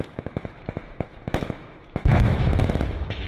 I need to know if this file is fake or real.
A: fake